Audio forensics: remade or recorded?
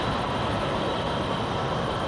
recorded